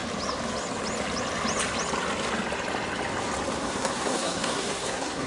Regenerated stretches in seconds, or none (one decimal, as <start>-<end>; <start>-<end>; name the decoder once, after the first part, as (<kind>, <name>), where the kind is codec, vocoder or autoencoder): 3.6-5.3 (codec, SNAC)